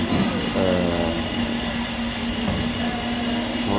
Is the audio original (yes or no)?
yes